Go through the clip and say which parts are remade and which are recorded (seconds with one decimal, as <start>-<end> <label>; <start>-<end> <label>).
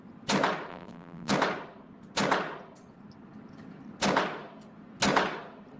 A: 0.0-0.7 recorded; 0.7-1.3 remade; 1.3-5.8 recorded